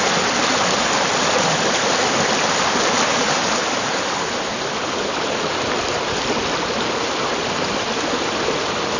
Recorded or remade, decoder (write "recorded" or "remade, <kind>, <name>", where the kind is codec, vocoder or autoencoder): recorded